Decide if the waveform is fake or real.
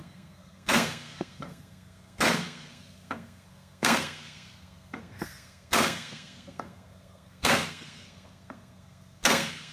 fake